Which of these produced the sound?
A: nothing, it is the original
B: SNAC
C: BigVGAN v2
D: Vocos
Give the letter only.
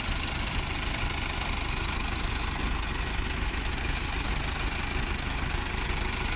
A